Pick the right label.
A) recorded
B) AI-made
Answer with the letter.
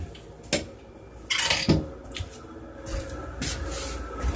A